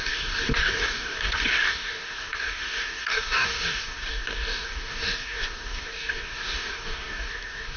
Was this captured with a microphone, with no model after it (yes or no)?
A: no